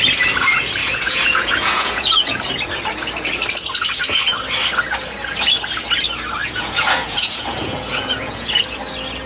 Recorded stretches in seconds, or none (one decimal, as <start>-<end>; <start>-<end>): 0.0-0.8; 2.4-6.4; 8.6-9.3